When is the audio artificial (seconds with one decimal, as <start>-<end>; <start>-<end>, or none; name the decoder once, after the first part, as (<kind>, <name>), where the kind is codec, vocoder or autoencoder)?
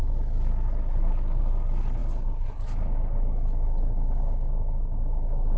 none